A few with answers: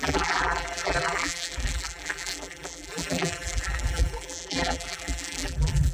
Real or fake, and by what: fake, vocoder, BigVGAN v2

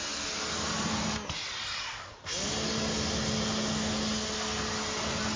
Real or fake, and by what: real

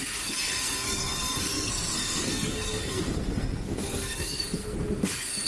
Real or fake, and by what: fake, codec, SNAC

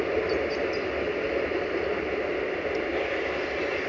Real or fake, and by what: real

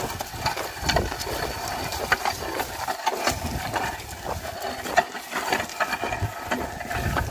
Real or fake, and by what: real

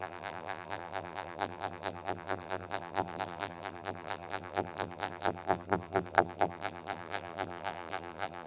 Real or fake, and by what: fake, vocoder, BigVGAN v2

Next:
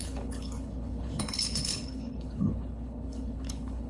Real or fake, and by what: fake, codec, HILCodec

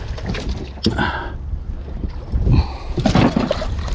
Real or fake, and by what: real